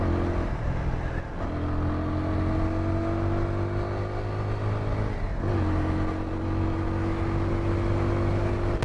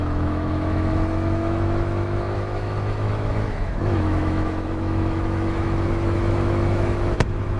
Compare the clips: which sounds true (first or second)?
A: first